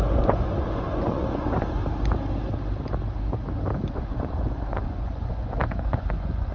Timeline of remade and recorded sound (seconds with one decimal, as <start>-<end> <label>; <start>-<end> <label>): 0.0-1.8 remade; 1.8-3.9 recorded; 3.9-6.5 remade